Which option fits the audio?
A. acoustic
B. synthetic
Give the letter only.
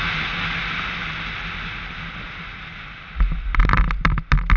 A